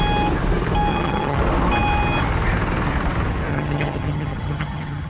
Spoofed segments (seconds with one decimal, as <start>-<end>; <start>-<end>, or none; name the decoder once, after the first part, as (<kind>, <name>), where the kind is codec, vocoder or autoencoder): 0.9-1.4 (vocoder, HiFi-GAN); 3.5-5.1